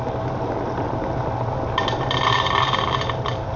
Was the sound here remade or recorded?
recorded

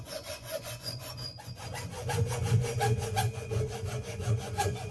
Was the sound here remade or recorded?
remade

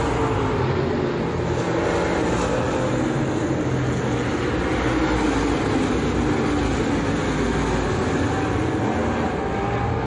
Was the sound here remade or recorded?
recorded